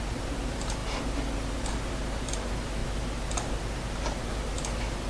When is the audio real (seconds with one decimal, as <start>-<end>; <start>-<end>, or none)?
0.0-5.1